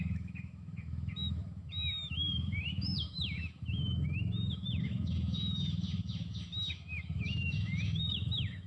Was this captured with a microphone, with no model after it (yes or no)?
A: no